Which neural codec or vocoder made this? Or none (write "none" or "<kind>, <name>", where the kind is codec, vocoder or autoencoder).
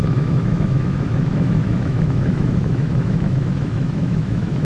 autoencoder, DAC-VAE